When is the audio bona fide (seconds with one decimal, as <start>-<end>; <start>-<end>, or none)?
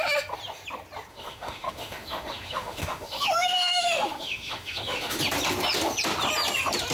0.0-1.1; 5.2-6.9